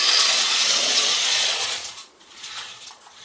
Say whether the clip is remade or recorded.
remade